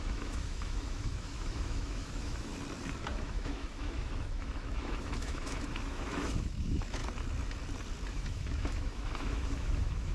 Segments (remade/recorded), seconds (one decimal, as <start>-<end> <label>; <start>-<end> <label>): 0.0-2.5 remade; 2.5-3.1 recorded; 3.1-7.0 remade; 7.0-8.1 recorded; 8.1-10.1 remade